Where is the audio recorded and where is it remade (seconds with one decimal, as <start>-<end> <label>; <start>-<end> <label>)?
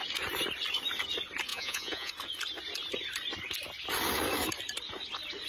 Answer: 0.0-1.5 recorded; 1.5-2.1 remade; 2.1-5.5 recorded